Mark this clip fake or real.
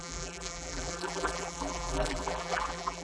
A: fake